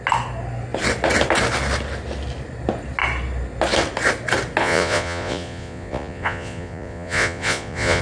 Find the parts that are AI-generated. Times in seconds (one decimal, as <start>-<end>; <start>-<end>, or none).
4.6-8.0